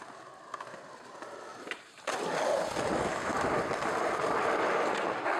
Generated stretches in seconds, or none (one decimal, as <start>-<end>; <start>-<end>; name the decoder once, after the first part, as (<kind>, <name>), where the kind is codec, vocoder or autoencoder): 1.5-4.7 (vocoder, BigVGAN v2)